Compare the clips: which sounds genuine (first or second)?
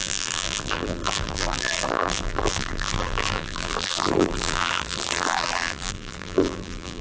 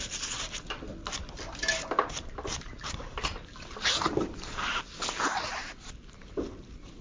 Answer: second